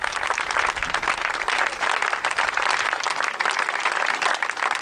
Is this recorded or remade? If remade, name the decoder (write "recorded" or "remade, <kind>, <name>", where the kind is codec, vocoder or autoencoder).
recorded